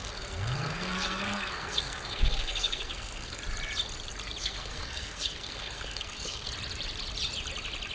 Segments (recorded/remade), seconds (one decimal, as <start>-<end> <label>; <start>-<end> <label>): 0.0-3.4 remade; 3.4-4.4 recorded; 4.4-6.5 remade; 6.5-7.9 recorded